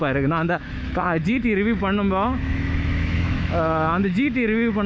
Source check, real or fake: fake